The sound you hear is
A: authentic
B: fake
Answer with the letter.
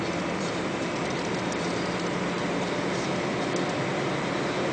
A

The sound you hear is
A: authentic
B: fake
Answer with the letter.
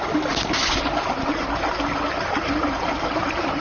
B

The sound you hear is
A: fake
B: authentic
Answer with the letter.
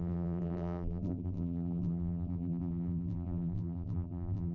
A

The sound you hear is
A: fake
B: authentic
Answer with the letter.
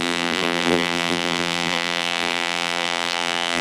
A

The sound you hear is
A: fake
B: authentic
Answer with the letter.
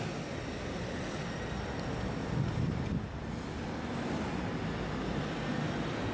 B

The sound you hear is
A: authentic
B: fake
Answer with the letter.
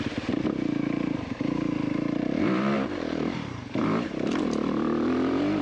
B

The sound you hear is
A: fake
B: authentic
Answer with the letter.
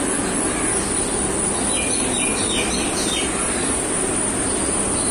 B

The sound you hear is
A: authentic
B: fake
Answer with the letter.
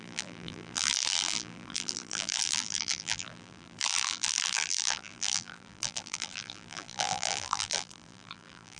B